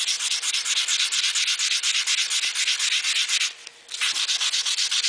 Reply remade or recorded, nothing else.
recorded